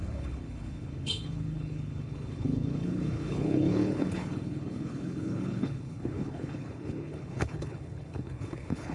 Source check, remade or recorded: remade